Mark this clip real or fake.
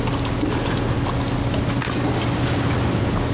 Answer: real